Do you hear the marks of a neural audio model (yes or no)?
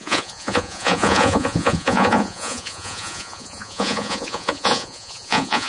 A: yes